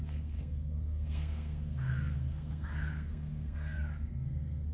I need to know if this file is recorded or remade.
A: remade